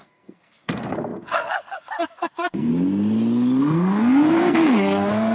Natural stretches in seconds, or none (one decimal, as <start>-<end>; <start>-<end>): 2.7-3.6